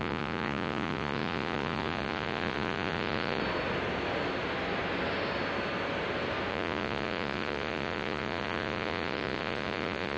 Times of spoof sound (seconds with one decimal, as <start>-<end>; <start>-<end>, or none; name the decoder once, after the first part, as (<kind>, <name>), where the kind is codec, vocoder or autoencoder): 0.0-3.4 (vocoder, Vocos); 6.5-10.2